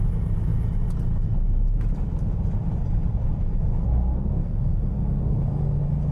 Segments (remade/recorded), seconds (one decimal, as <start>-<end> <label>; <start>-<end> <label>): 0.0-3.7 recorded; 3.7-5.4 remade; 5.4-6.1 recorded